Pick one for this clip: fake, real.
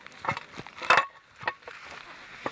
real